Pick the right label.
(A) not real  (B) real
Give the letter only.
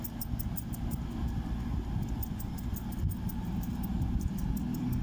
B